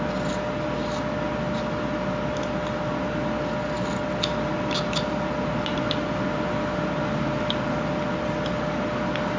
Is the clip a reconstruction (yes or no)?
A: no